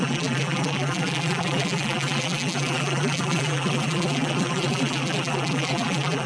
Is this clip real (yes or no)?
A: no